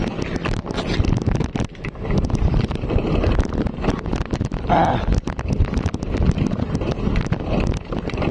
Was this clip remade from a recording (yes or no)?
no